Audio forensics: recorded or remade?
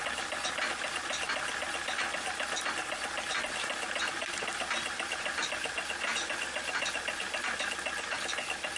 recorded